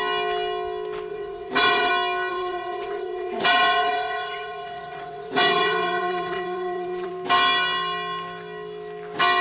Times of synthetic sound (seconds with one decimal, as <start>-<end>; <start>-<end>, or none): 1.1-1.9; 2.3-7.1